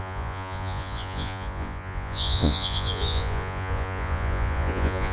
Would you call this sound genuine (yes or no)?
no